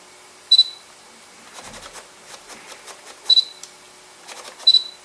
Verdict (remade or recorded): remade